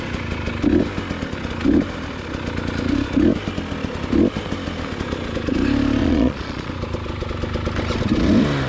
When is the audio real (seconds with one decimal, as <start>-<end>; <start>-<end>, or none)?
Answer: 0.0-6.0; 6.7-8.7